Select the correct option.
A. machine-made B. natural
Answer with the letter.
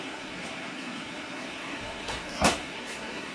A